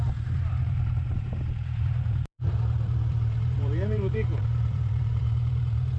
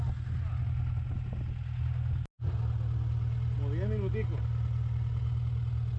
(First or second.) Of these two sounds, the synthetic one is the first